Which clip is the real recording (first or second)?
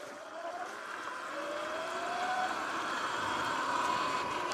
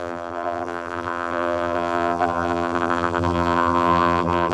first